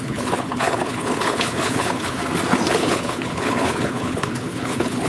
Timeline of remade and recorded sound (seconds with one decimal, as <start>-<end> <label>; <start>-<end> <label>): 0.0-2.2 remade; 2.2-2.7 recorded; 2.7-5.1 remade